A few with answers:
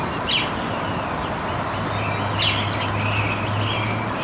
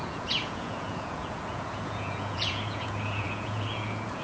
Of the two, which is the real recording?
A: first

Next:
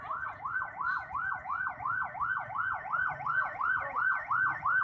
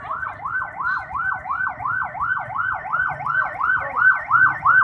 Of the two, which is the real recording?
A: second